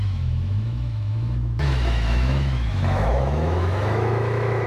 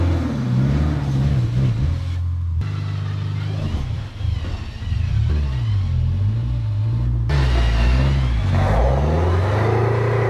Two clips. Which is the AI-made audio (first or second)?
first